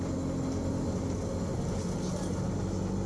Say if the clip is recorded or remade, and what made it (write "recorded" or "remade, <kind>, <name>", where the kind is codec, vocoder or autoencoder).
recorded